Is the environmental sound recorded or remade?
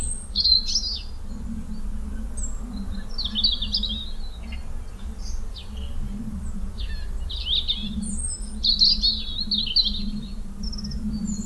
recorded